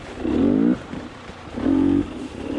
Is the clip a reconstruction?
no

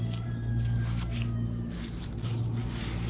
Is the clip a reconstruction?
no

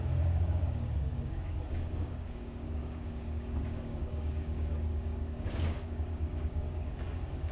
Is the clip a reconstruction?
yes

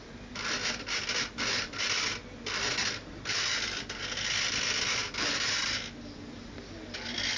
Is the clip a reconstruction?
no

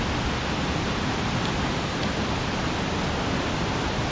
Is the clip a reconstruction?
no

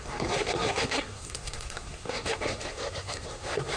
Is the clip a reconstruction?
yes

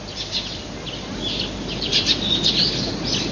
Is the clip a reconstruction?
no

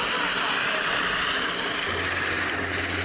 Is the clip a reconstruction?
no